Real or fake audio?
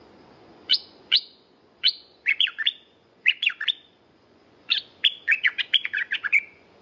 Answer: fake